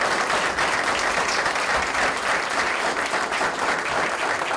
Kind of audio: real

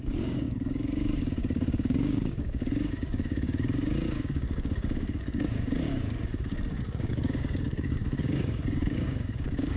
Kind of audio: fake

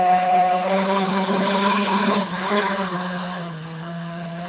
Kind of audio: fake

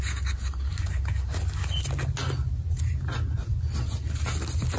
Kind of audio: real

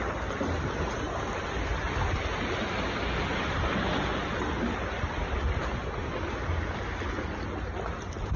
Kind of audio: real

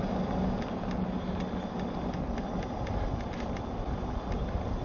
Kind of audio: real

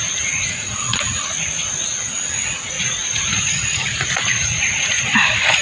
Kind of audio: fake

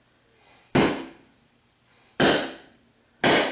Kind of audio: real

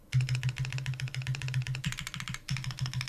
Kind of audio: real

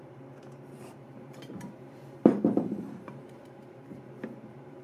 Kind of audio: fake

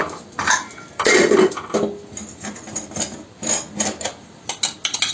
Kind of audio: real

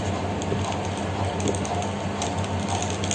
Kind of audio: real